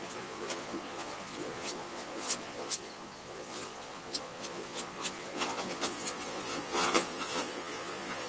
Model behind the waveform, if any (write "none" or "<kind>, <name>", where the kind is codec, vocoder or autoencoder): vocoder, Vocos